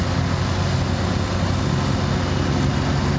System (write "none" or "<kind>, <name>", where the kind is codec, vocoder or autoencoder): none